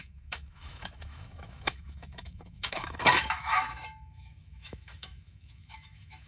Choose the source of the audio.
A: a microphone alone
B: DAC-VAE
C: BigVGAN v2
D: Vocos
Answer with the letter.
B